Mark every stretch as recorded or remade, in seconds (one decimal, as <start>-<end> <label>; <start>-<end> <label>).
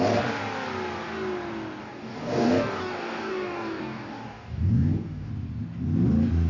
0.0-1.8 recorded; 1.8-5.3 remade; 5.3-6.5 recorded